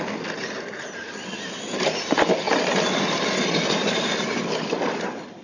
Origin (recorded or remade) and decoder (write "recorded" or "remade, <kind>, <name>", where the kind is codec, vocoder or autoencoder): recorded